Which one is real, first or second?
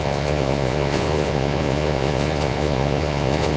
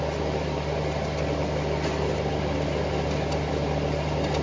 second